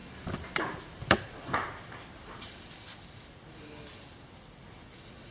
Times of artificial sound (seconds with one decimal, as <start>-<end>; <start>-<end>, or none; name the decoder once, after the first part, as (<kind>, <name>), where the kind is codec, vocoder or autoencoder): 0.0-3.2 (vocoder, BigVGAN v2)